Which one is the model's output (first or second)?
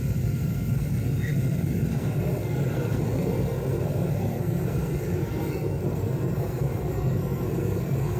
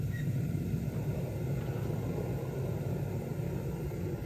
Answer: first